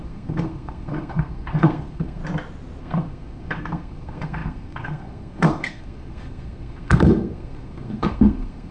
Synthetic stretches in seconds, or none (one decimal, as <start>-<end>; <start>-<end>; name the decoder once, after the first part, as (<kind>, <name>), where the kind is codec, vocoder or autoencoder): 0.0-2.2 (codec, SNAC); 2.8-8.7